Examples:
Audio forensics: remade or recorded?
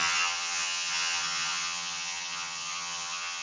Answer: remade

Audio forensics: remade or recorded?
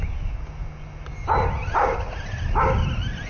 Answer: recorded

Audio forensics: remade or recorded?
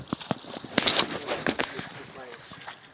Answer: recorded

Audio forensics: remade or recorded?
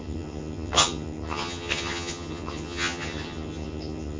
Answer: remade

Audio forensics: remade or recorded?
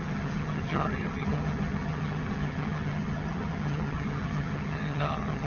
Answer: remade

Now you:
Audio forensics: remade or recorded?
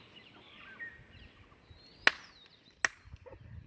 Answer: recorded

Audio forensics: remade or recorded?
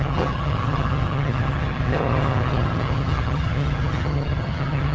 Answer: remade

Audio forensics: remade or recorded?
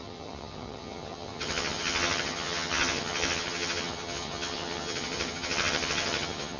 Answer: remade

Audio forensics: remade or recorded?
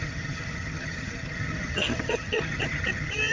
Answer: remade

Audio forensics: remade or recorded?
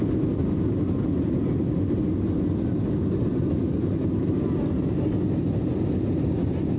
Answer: recorded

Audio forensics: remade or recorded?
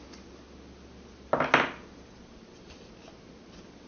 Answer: recorded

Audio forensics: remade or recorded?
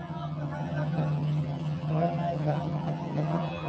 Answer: remade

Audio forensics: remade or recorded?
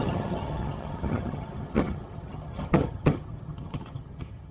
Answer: remade